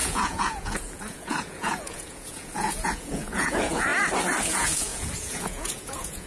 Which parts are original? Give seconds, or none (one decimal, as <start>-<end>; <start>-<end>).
3.9-4.4